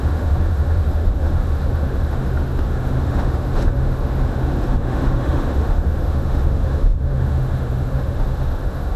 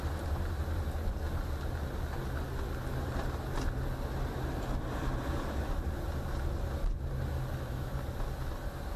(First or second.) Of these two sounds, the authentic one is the second